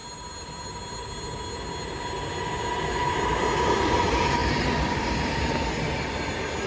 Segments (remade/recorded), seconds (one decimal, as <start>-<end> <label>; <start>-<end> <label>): 0.0-6.7 recorded